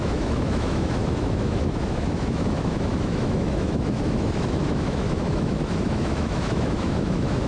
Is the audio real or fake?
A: fake